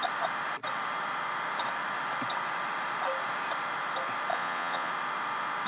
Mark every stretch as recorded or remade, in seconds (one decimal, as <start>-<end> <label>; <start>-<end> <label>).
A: 0.0-4.3 recorded; 4.3-4.9 remade; 4.9-5.7 recorded